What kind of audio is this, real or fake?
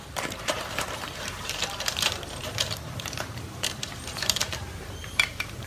fake